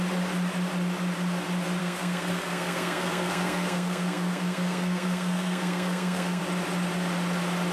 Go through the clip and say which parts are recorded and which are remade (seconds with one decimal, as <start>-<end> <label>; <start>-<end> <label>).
0.0-1.8 recorded; 1.8-6.4 remade; 6.4-7.7 recorded